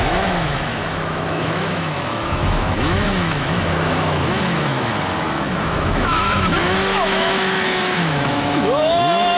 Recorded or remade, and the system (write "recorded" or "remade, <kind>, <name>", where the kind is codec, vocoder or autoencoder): remade, autoencoder, DAC-VAE